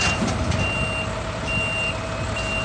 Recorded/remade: recorded